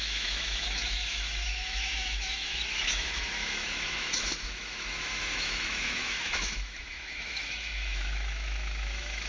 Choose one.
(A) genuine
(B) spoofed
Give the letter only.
B